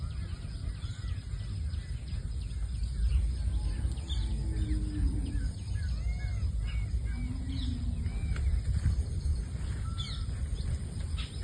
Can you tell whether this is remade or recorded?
recorded